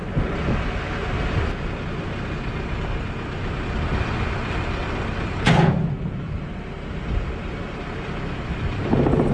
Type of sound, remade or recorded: recorded